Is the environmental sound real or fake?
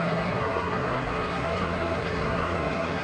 fake